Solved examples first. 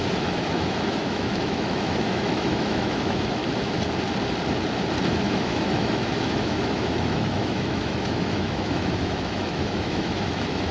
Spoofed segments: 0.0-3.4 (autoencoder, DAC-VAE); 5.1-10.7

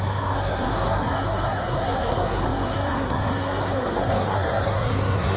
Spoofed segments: 0.0-5.4 (codec, SNAC)

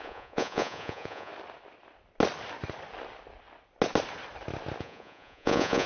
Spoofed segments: 0.0-1.3 (vocoder, Vocos); 4.8-5.9

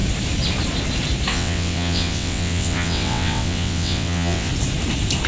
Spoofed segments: 1.3-4.5 (vocoder, WaveNeXt)

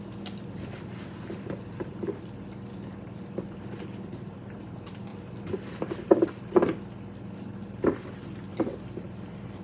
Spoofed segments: none

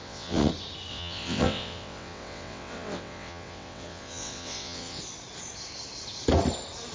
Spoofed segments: 0.0-0.5 (vocoder, WaveNeXt); 0.9-5.0